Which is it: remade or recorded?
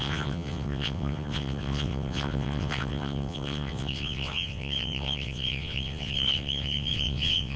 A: remade